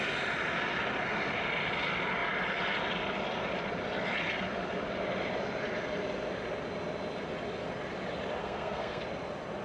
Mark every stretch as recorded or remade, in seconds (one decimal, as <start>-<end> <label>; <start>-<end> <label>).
0.0-8.4 recorded; 8.4-9.0 remade; 9.0-9.6 recorded